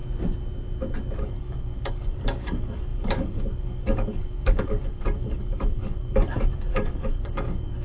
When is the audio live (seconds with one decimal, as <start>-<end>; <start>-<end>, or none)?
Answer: 0.0-1.2